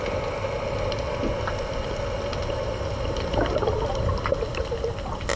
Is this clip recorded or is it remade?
recorded